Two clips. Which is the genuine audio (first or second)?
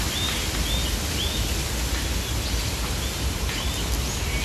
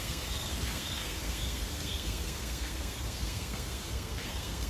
first